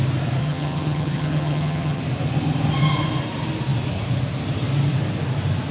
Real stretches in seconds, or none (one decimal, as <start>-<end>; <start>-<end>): 0.0-0.4; 2.0-5.7

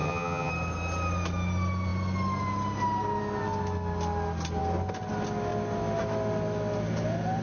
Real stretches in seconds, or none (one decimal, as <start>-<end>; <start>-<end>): 0.5-7.4